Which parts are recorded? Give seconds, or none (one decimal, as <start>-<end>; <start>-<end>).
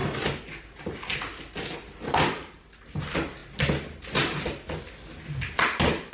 1.0-6.1